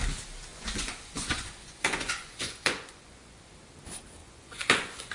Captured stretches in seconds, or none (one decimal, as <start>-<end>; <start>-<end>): 0.0-0.5; 3.4-4.2